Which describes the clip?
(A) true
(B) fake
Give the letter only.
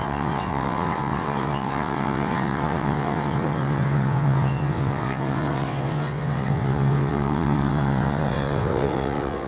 B